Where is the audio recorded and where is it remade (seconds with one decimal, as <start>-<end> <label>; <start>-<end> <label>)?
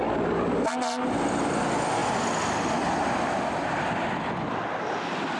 0.0-5.4 recorded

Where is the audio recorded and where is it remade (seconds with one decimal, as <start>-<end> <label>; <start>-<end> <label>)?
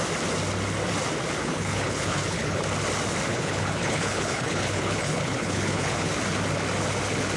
0.0-1.4 recorded; 1.4-2.6 remade; 2.6-3.3 recorded; 3.3-6.1 remade; 6.1-7.4 recorded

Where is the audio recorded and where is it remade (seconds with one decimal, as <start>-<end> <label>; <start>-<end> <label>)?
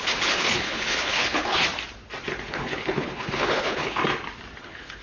0.0-1.6 remade; 1.6-2.5 recorded; 2.5-4.0 remade; 4.0-4.6 recorded; 4.6-5.0 remade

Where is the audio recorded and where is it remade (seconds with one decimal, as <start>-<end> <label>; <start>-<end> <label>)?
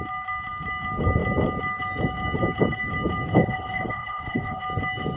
0.0-3.3 recorded; 3.3-4.6 remade; 4.6-5.2 recorded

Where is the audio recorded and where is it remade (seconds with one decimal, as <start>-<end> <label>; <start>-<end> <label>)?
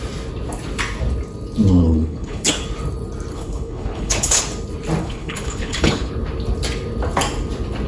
0.0-1.8 recorded; 1.8-2.5 remade; 2.5-3.3 recorded; 3.3-4.4 remade; 4.4-5.0 recorded; 5.0-6.1 remade; 6.1-7.9 recorded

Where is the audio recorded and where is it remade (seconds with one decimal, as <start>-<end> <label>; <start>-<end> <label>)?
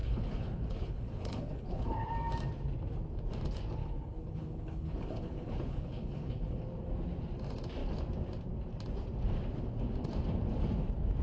0.0-2.1 remade; 2.1-3.8 recorded; 3.8-6.6 remade; 6.6-11.2 recorded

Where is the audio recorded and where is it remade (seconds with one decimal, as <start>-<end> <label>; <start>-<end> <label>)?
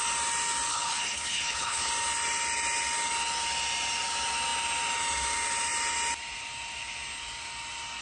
0.0-0.7 recorded; 0.7-1.9 remade; 1.9-8.0 recorded